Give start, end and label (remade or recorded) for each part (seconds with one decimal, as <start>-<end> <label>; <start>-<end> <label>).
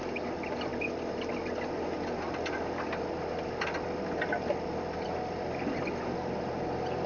0.0-7.1 recorded